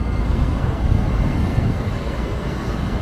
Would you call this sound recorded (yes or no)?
no